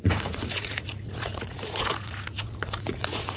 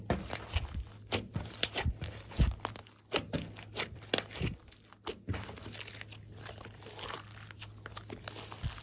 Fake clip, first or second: first